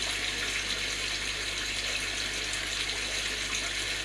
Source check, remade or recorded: recorded